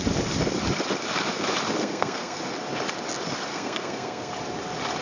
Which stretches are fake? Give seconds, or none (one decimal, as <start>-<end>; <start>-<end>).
1.8-2.4; 3.5-4.3